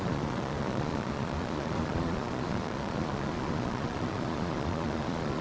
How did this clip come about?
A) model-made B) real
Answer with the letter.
A